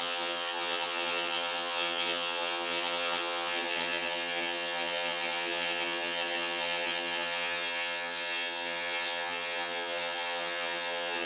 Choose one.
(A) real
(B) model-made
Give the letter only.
B